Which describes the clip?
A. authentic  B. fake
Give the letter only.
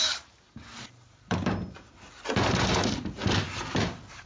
B